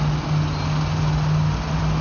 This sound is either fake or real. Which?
real